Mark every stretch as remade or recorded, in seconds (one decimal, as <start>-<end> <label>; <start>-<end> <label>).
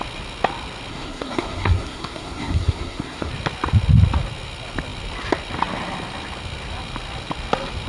0.0-0.9 recorded; 0.9-3.3 remade; 3.3-7.9 recorded